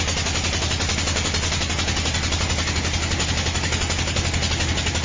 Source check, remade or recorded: recorded